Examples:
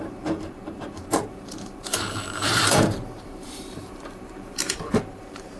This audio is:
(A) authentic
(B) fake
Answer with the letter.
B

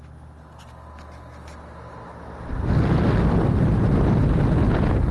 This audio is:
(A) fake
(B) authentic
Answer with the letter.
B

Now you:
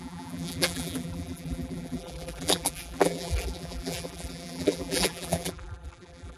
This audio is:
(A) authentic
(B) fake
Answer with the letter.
B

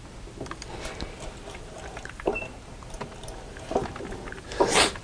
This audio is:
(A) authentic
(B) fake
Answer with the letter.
A